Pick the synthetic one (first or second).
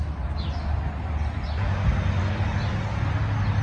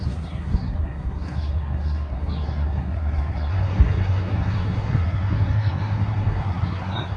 second